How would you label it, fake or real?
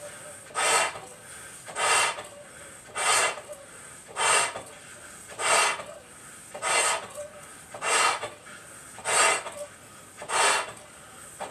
real